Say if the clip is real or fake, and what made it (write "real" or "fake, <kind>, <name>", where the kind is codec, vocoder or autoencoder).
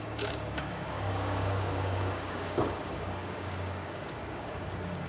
fake, codec, DAC